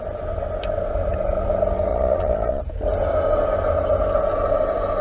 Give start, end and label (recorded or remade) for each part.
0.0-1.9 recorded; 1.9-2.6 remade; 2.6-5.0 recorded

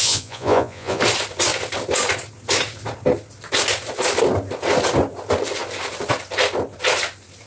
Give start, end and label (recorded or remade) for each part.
0.0-1.0 remade; 1.0-7.5 recorded

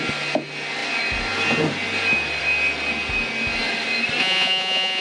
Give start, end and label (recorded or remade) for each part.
0.0-4.2 recorded; 4.2-5.0 remade

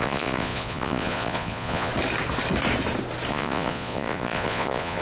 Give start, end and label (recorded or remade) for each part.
0.0-1.9 remade; 1.9-3.3 recorded; 3.3-5.0 remade

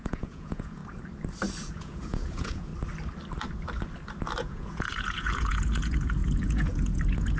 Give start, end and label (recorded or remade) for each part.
0.0-0.8 remade; 0.8-1.6 recorded; 1.6-2.7 remade; 2.7-4.4 recorded; 4.4-7.4 remade

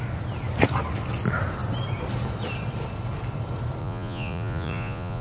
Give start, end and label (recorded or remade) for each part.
0.0-3.8 recorded; 3.8-5.2 remade